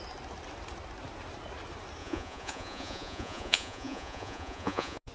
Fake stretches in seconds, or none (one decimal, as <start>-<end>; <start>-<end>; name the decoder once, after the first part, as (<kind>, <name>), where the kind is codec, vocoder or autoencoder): 2.0-5.1 (vocoder, Vocos)